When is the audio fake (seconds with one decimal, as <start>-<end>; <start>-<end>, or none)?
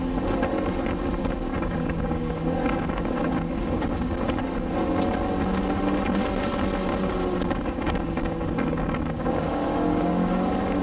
1.2-4.4; 6.9-10.8